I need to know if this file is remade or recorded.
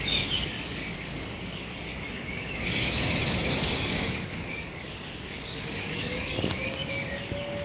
remade